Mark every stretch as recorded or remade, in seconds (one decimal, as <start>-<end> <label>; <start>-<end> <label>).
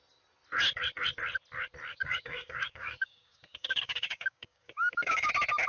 0.0-1.9 recorded; 1.9-5.3 remade; 5.3-5.7 recorded